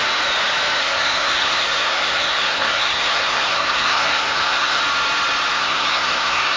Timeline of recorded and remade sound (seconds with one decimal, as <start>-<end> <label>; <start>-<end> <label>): 0.0-0.8 recorded; 0.8-4.8 remade; 4.8-5.5 recorded; 5.5-6.6 remade